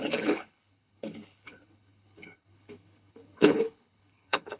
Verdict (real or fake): fake